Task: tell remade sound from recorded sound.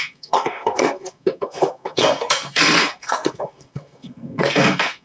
remade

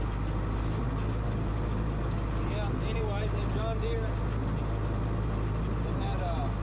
recorded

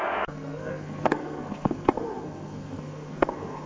remade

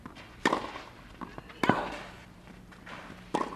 recorded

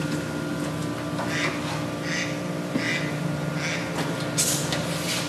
recorded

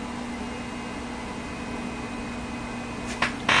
recorded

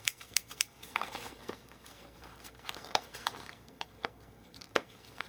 remade